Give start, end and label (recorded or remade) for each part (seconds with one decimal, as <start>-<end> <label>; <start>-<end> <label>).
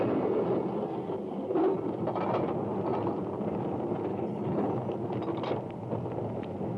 0.0-4.1 recorded; 4.1-4.7 remade; 4.7-6.8 recorded